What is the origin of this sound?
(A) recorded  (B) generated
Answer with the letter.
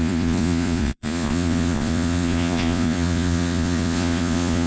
B